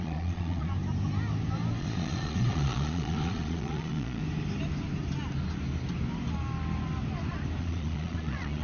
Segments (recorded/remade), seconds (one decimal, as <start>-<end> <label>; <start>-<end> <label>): 0.0-0.7 remade; 0.7-1.8 recorded; 1.8-4.2 remade; 4.2-7.6 recorded; 7.6-8.6 remade

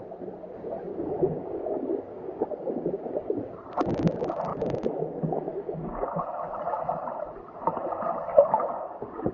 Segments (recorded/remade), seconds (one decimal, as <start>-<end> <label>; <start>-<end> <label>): 0.0-0.9 recorded; 0.9-3.4 remade; 3.4-4.5 recorded; 4.5-6.2 remade; 6.2-8.3 recorded; 8.3-9.3 remade

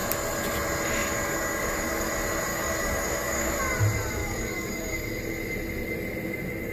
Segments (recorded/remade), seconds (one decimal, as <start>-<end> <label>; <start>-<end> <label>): 0.0-1.0 recorded; 1.0-2.1 remade; 2.1-2.5 recorded; 2.5-3.6 remade; 3.6-4.2 recorded; 4.2-5.2 remade; 5.2-6.7 recorded

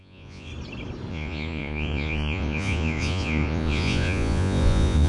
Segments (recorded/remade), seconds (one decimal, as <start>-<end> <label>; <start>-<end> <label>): 0.0-0.5 remade; 0.5-1.1 recorded; 1.1-5.1 remade

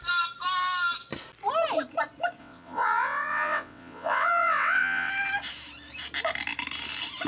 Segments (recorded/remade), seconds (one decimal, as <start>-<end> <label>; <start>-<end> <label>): 0.0-2.4 recorded; 2.4-5.1 remade; 5.1-7.3 recorded

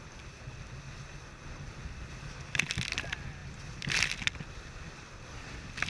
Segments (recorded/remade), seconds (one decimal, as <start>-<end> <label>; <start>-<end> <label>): 0.0-5.9 recorded

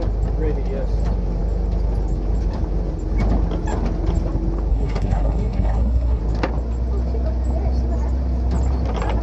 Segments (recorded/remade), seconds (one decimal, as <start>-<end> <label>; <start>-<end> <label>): 0.0-4.7 recorded; 4.7-6.2 remade; 6.2-9.2 recorded